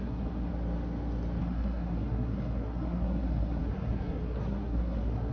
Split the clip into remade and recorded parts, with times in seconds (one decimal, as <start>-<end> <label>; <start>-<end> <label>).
0.0-0.5 remade; 0.5-1.4 recorded; 1.4-5.3 remade